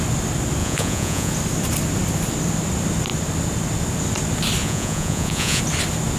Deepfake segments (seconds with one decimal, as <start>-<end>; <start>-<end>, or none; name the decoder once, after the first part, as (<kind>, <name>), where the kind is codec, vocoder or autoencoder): 0.6-1.3 (vocoder, Vocos); 4.6-5.6